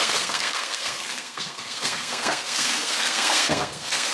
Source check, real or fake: fake